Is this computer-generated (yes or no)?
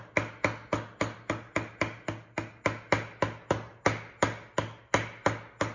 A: no